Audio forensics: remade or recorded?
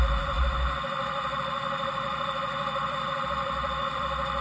remade